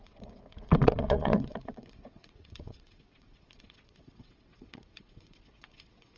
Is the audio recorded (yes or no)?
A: no